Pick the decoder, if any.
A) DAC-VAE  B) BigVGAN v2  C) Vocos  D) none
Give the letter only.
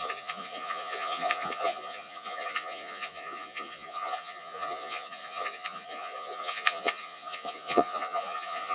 C